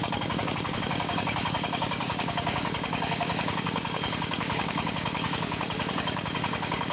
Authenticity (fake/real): fake